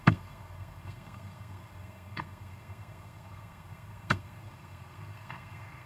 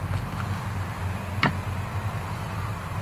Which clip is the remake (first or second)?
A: first